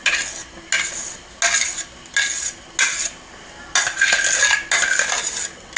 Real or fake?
real